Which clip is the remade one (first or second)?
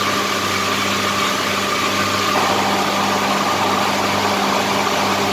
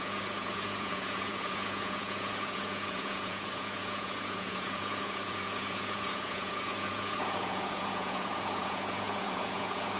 second